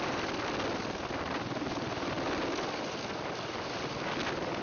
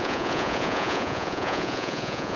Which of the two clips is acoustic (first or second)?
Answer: first